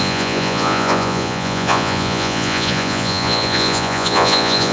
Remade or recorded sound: remade